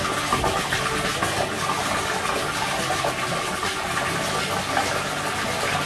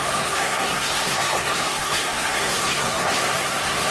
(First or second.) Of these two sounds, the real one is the first